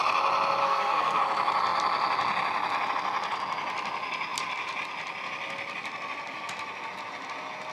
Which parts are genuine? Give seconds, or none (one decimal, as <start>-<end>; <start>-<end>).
0.0-0.6; 1.2-7.7